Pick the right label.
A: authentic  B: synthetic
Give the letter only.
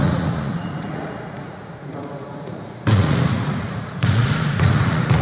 B